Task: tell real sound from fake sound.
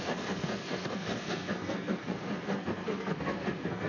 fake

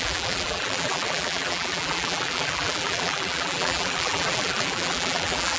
fake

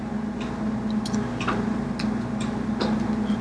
real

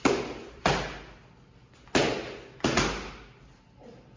real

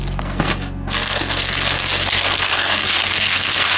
fake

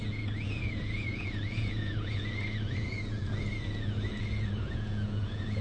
fake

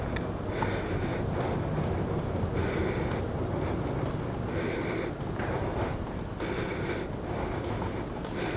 real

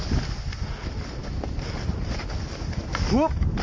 real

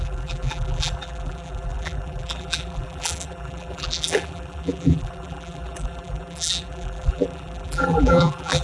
fake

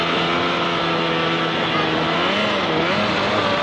real